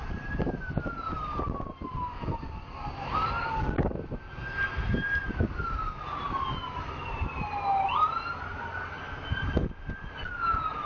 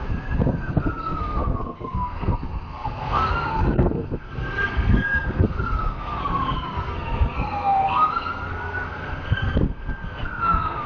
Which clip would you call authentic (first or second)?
first